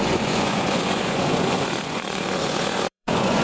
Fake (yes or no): yes